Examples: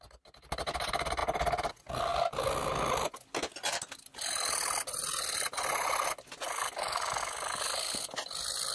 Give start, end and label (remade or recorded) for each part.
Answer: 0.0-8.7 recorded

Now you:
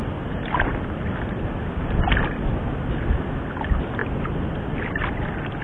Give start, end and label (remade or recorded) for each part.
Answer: 0.0-5.6 recorded

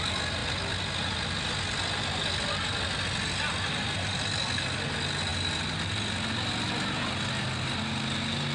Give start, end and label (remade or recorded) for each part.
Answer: 0.0-8.5 recorded

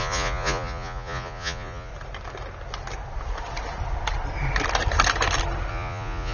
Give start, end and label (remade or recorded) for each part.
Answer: 0.0-1.9 remade; 1.9-5.7 recorded; 5.7-6.3 remade

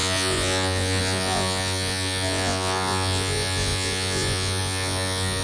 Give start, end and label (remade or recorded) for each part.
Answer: 0.0-5.4 remade